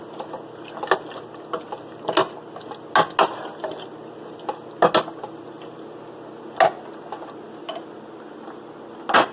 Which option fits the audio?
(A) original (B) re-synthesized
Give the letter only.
A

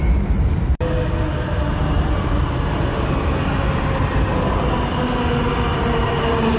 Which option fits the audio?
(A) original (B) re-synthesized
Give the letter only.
A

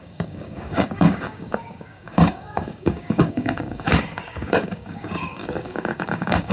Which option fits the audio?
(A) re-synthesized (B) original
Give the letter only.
A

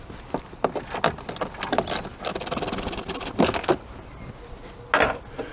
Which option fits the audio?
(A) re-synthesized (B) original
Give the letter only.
B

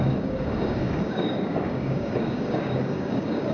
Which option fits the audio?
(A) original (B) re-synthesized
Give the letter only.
B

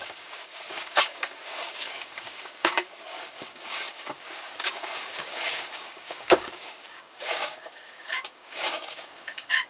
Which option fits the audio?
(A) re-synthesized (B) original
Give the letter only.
A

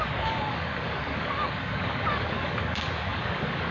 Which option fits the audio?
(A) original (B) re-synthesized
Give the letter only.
B